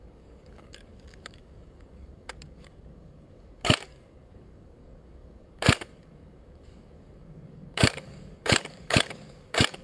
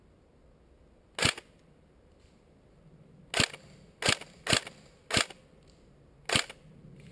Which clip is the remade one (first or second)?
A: first